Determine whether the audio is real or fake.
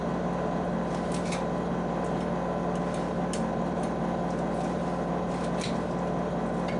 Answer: real